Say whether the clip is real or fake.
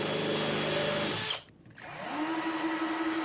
real